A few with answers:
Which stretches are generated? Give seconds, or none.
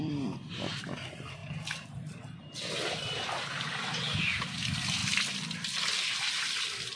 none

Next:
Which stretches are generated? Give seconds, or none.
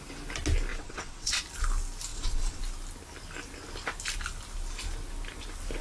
0.7-1.4 (vocoder, WaveNeXt); 2.1-2.6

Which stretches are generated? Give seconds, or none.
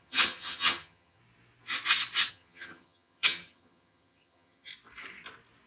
0.0-1.2 (vocoder, HiFi-GAN); 2.3-4.7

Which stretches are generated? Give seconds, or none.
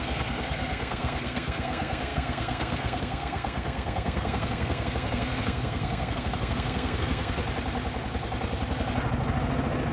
0.0-7.4 (codec, SNAC)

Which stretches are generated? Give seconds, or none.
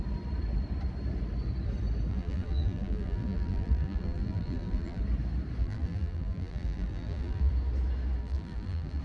2.1-5.0 (vocoder, BigVGAN v2); 5.6-7.5; 8.2-9.0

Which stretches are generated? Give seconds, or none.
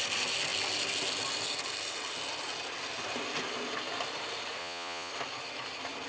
4.6-5.1 (vocoder, Vocos)